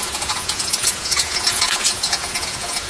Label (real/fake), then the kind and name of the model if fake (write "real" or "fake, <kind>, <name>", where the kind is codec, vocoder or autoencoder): fake, vocoder, Vocos